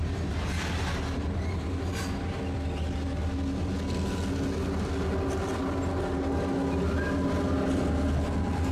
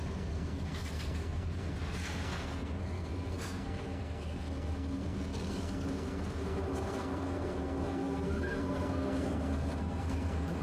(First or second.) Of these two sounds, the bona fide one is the first